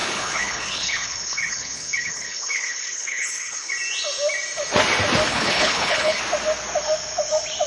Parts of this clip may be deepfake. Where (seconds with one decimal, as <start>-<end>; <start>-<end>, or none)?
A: 0.0-3.7; 5.3-6.2